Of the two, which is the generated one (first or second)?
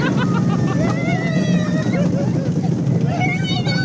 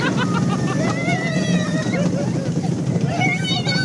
second